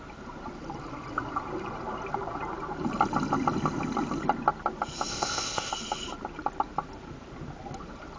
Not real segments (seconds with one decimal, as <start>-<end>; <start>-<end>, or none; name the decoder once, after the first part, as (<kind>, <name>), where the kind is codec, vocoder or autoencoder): 5.1-5.7 (codec, ZipCodec)